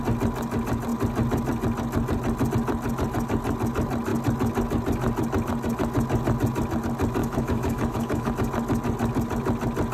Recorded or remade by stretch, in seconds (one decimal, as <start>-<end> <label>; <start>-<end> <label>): 0.0-7.2 recorded; 7.2-8.3 remade; 8.3-9.9 recorded